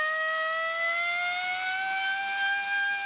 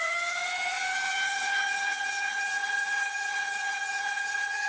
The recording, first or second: first